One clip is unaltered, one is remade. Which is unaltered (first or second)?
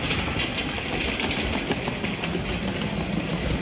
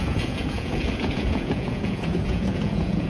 first